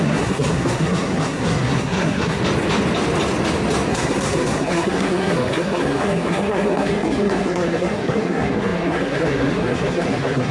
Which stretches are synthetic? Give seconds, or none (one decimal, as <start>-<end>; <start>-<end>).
0.0-2.4; 3.9-10.5